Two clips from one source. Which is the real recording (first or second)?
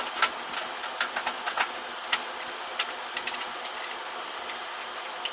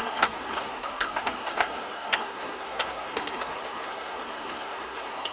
first